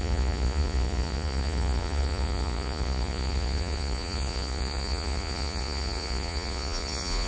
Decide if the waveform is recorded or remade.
remade